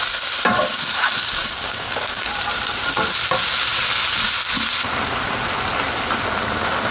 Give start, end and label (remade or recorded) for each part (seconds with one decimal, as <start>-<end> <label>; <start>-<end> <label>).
0.0-0.7 recorded; 0.7-2.3 remade; 2.3-6.9 recorded